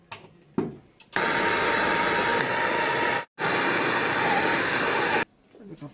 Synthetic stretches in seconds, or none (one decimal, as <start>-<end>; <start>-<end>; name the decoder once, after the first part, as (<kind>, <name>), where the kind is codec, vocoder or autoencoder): none